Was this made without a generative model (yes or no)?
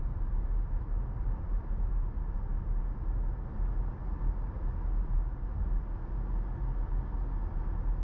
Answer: yes